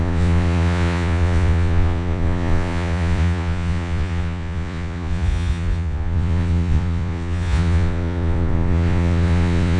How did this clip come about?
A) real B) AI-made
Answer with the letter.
B